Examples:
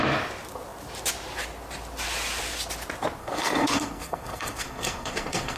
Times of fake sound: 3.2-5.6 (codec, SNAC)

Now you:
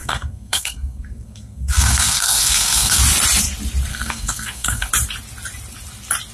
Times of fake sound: 0.0-3.0 (codec, SNAC); 3.9-4.9

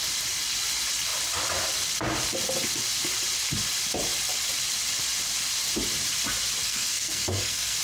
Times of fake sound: 6.6-7.8 (codec, SNAC)

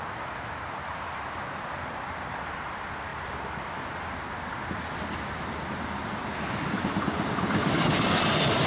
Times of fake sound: none

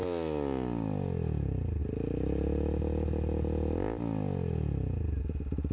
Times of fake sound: none

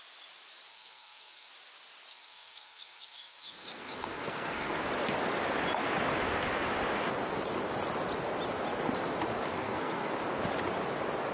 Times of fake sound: 0.7-1.5 (codec, SNAC); 2.1-4.8; 9.5-10.1